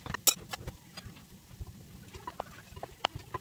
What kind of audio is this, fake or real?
real